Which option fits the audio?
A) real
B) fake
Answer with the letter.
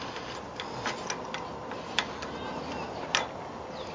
A